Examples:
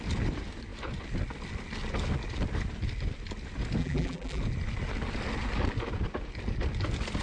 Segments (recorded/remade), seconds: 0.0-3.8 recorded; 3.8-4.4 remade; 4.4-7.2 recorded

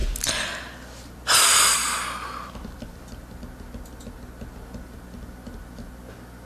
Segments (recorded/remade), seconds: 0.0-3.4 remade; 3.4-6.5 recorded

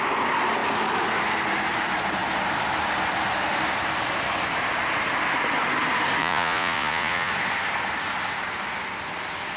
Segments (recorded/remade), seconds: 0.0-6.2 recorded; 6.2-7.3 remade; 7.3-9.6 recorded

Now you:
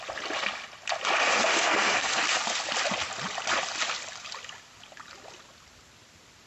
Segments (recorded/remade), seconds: 0.0-1.2 recorded; 1.2-2.2 remade; 2.2-6.5 recorded

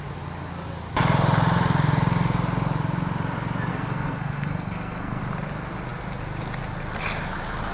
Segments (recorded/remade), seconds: 0.0-3.7 recorded; 3.7-5.2 remade; 5.2-7.7 recorded

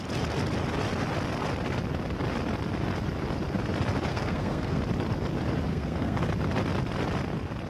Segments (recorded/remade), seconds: 0.0-4.1 recorded; 4.1-4.8 remade; 4.8-5.7 recorded; 5.7-6.3 remade; 6.3-7.7 recorded